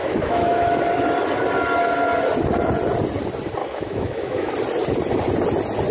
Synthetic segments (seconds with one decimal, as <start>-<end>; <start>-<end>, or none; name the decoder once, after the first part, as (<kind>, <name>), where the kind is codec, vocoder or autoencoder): 0.0-0.8 (autoencoder, DAC-VAE); 3.6-4.5